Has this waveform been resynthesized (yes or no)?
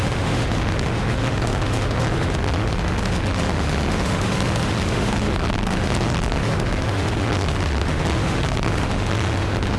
yes